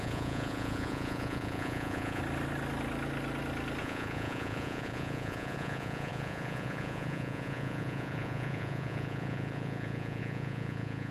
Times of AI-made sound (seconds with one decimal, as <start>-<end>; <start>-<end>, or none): 0.0-2.2; 3.8-11.1